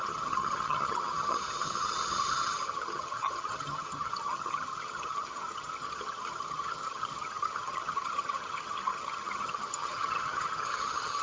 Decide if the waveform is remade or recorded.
remade